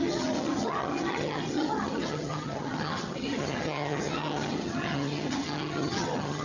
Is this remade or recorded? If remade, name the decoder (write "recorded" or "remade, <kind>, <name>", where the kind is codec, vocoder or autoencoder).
remade, vocoder, HiFi-GAN